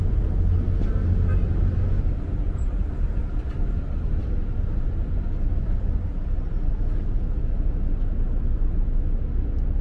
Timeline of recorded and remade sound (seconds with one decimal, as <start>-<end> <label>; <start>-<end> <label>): 0.0-9.8 recorded